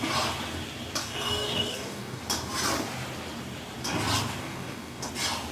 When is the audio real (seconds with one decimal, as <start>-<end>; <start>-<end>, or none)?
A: 0.0-1.0; 2.2-4.4; 5.1-5.5